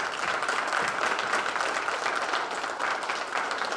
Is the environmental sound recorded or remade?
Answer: recorded